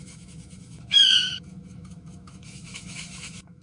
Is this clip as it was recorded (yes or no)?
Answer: no